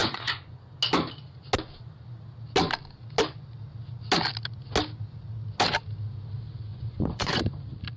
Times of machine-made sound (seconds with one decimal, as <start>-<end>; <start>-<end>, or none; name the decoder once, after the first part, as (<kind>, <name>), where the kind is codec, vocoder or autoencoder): 0.0-0.8 (vocoder, Vocos); 6.7-7.4